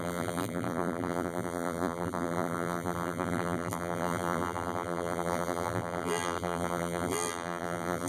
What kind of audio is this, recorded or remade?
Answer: remade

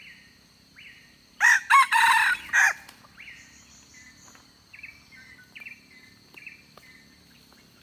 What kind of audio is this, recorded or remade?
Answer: recorded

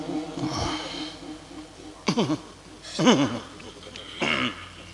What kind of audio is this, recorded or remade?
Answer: recorded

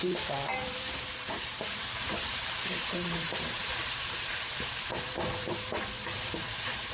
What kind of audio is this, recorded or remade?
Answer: remade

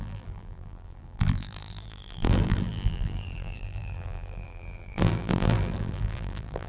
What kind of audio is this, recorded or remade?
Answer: remade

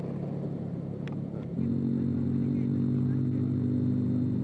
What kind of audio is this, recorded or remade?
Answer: recorded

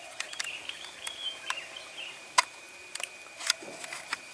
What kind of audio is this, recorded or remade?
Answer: remade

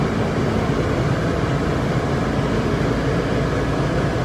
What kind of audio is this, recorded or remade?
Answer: recorded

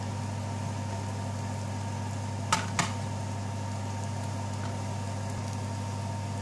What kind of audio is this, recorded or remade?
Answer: recorded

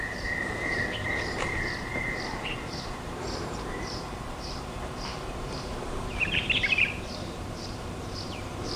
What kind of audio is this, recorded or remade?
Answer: remade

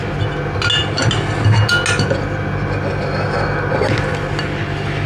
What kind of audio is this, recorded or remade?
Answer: recorded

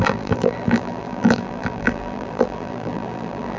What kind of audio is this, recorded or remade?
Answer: remade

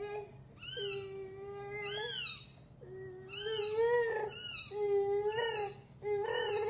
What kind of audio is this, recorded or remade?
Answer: recorded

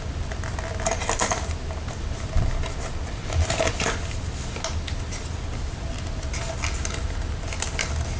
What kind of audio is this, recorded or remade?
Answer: recorded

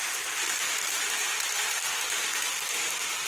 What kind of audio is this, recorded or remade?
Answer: remade